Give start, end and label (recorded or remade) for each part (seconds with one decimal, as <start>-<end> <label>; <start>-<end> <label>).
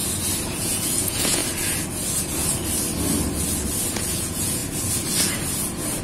0.0-0.6 recorded; 0.6-1.4 remade; 1.4-3.9 recorded; 3.9-4.6 remade; 4.6-6.0 recorded